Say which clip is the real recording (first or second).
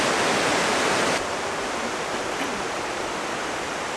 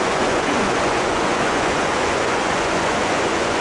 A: first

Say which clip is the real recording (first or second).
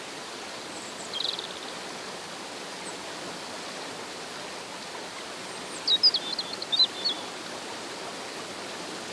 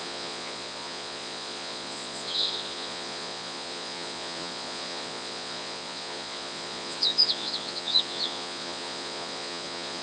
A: first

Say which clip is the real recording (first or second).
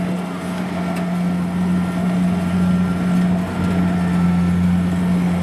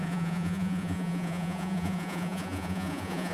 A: first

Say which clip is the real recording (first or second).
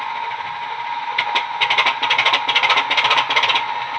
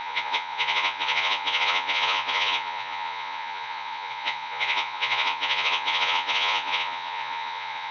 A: first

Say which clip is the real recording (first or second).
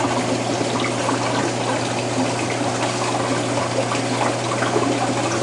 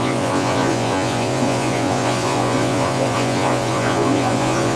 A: first